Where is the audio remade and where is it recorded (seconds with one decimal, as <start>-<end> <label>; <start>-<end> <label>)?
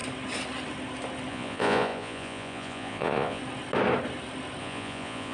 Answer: 0.0-1.3 recorded; 1.3-3.4 remade; 3.4-4.6 recorded; 4.6-5.3 remade